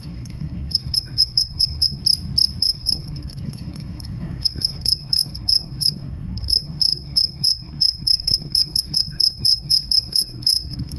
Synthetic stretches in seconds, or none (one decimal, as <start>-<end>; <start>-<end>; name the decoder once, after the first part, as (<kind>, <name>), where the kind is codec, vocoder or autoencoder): 0.0-2.0 (codec, SNAC); 2.6-11.0